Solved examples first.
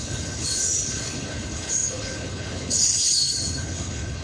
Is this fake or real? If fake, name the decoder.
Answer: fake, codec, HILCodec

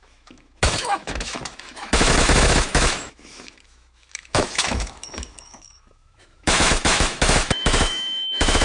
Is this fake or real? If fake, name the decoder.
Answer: fake, autoencoder, DAC-VAE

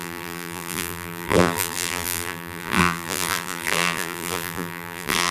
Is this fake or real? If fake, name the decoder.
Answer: fake, vocoder, BigVGAN v2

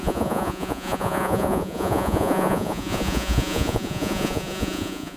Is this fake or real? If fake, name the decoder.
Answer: fake, vocoder, Vocos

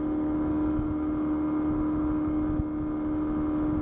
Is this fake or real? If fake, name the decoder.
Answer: real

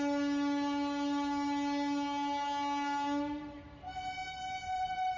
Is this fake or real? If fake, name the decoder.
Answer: real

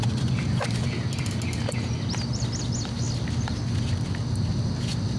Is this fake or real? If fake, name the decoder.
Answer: real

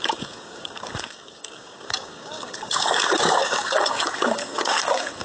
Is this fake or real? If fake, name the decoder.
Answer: fake, codec, DAC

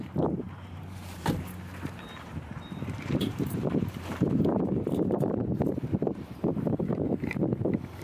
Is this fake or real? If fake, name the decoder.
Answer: fake, vocoder, BigVGAN v2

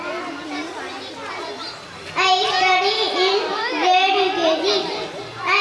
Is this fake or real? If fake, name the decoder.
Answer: real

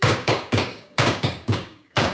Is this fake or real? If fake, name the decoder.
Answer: fake, codec, DAC